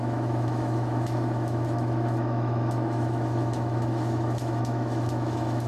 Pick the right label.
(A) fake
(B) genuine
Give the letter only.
A